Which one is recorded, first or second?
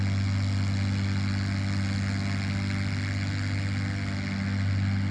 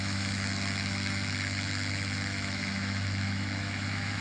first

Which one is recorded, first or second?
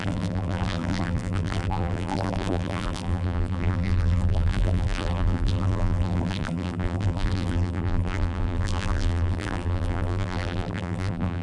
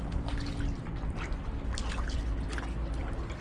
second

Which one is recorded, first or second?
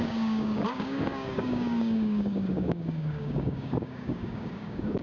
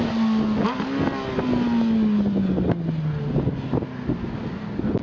second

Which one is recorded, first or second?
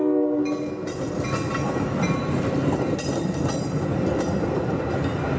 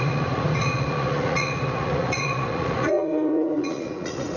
first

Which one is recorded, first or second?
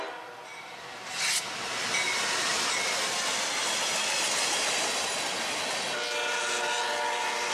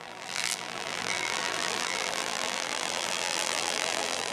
first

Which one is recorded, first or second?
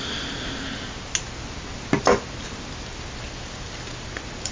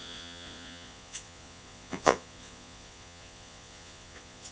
first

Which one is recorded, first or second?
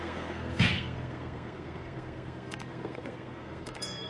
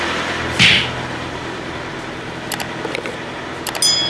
second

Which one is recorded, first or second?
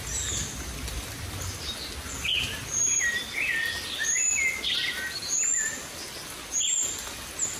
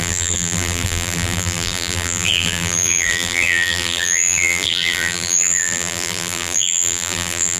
first